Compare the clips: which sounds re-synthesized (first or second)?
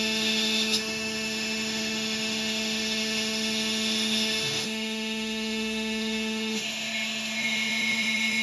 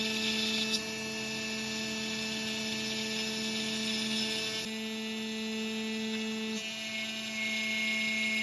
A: first